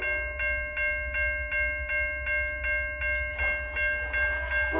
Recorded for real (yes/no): yes